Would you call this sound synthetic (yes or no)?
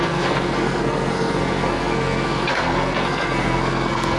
yes